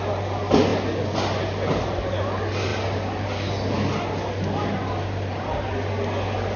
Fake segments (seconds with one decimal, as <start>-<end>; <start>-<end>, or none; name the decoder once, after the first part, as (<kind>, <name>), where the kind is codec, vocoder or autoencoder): none